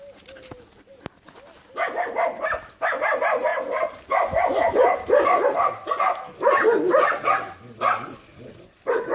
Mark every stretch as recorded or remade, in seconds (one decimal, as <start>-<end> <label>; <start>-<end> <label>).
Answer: 0.0-9.1 recorded